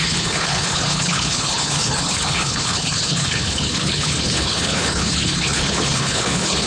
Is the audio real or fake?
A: fake